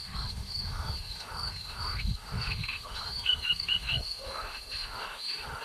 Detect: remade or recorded remade